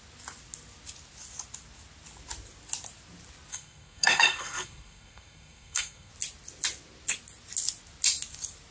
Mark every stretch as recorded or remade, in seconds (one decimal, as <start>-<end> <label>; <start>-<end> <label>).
0.0-3.5 recorded; 3.5-6.1 remade; 6.1-8.7 recorded